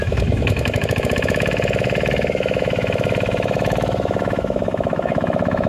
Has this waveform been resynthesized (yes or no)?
yes